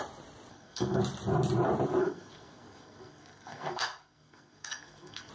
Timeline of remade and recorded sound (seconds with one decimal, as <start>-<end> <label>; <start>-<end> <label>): 0.0-0.5 recorded; 0.5-1.0 remade; 1.0-2.0 recorded; 2.0-5.3 remade